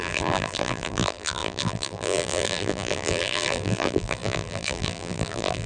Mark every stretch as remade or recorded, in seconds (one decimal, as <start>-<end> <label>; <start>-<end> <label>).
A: 0.0-5.7 remade